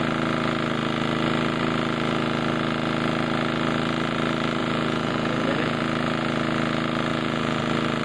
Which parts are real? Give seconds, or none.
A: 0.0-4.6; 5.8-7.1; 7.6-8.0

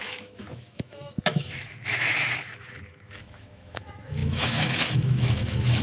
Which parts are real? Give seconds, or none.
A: none